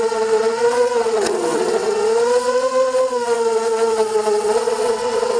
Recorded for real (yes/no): no